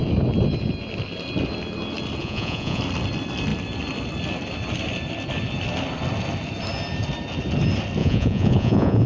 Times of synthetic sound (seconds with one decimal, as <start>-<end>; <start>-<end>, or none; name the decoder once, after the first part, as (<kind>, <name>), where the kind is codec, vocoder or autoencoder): 2.2-2.8 (vocoder, Vocos); 8.0-9.1